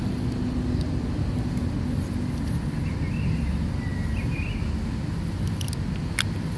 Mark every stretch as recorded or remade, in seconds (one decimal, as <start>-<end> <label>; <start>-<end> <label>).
0.0-6.6 recorded

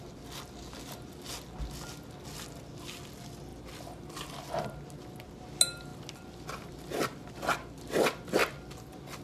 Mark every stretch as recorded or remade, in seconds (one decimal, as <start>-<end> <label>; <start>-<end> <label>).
0.0-3.5 recorded; 3.5-4.4 remade; 4.4-9.2 recorded

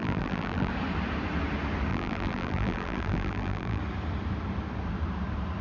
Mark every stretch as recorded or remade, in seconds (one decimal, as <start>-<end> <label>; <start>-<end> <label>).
0.0-0.7 remade; 0.7-1.9 recorded; 1.9-3.8 remade; 3.8-5.6 recorded

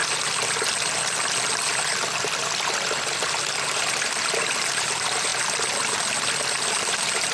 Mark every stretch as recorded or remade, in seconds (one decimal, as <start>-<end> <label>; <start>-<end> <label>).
0.0-4.4 recorded; 4.4-5.3 remade; 5.3-6.7 recorded; 6.7-7.3 remade